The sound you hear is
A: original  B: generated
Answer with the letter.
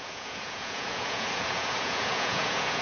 B